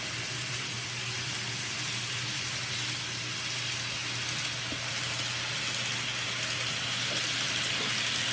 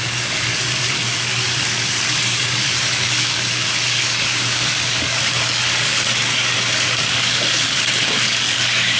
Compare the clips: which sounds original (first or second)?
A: first